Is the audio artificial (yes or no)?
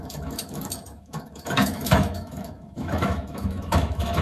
yes